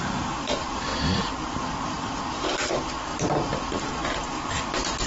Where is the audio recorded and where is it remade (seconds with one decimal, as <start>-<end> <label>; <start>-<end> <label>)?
0.0-3.1 remade; 3.1-3.8 recorded; 3.8-5.1 remade